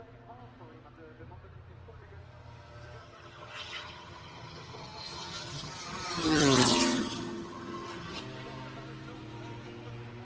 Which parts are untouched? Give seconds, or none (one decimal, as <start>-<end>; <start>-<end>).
0.0-3.0; 8.2-10.2